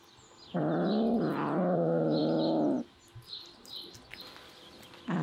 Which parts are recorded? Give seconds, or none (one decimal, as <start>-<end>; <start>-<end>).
0.0-5.2